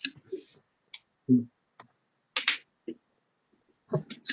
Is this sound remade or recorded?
recorded